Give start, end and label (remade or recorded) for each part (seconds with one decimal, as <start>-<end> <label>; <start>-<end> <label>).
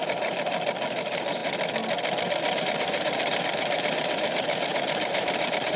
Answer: 0.0-1.4 remade; 1.4-2.6 recorded; 2.6-5.8 remade